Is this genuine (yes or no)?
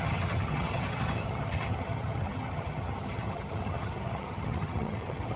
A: no